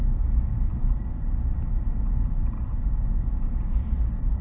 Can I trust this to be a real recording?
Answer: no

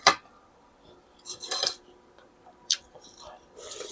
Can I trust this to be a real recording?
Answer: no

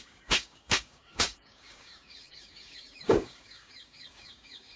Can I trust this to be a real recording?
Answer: no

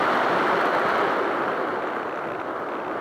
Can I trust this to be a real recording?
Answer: yes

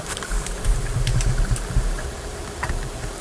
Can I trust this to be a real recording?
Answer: no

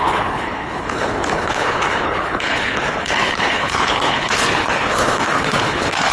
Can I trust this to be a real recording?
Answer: no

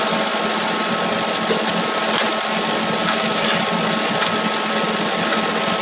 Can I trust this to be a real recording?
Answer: yes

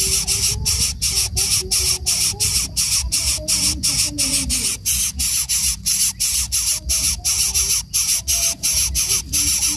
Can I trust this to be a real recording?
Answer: yes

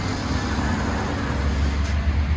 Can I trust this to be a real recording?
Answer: yes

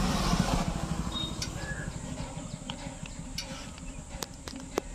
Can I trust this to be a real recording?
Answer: yes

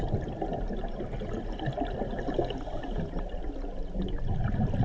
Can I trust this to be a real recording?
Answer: yes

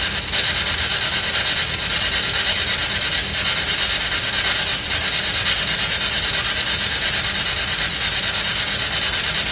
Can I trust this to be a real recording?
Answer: yes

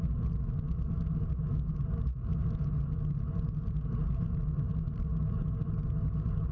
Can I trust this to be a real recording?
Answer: yes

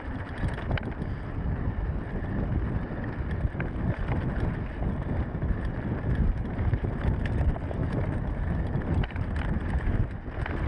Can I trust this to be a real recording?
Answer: yes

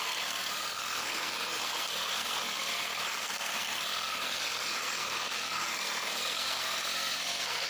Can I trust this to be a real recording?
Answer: no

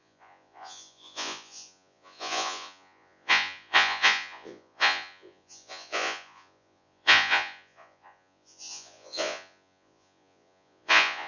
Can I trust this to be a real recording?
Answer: no